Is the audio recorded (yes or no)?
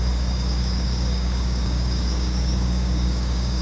no